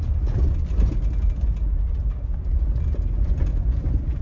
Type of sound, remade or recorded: recorded